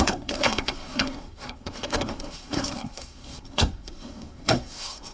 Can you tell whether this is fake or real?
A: fake